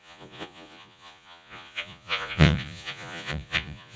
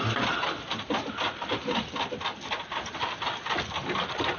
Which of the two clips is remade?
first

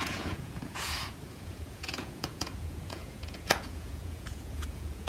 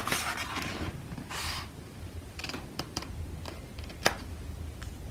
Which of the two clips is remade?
first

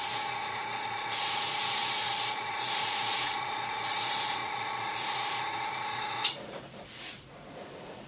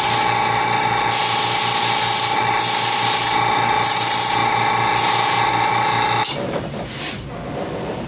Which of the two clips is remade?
first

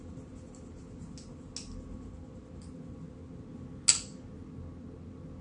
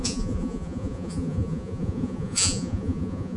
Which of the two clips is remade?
second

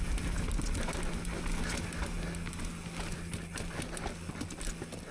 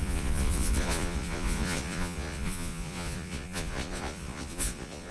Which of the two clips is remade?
second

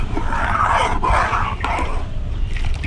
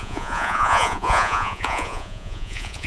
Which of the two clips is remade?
second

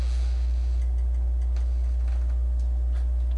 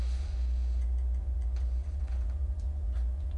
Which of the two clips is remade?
second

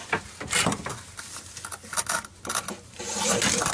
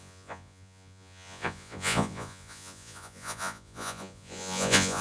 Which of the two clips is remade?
second